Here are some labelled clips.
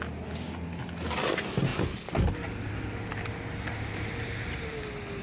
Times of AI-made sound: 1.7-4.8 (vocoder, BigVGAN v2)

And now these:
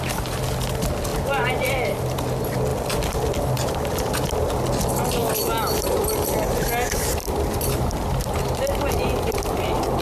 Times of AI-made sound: 1.1-2.0 (vocoder, BigVGAN v2); 2.7-4.1; 5.2-10.0

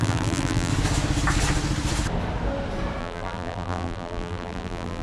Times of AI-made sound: 0.0-0.7 (vocoder, BigVGAN v2); 3.0-5.0